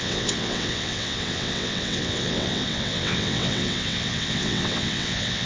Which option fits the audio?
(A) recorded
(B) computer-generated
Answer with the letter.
B